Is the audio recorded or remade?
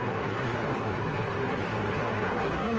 remade